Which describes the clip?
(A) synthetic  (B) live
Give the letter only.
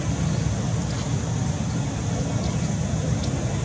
B